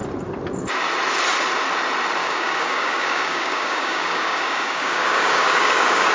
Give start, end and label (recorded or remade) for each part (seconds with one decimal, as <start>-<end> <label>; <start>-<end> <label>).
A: 0.0-2.2 recorded; 2.2-6.1 remade